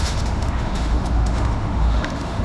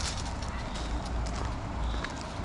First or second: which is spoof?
first